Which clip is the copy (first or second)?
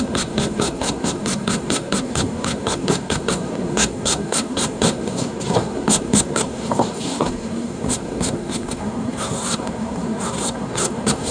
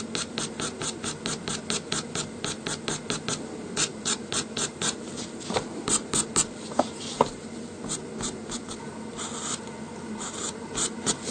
first